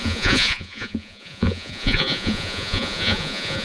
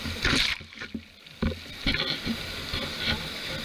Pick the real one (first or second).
second